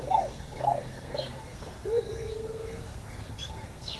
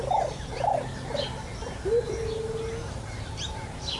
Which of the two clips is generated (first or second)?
first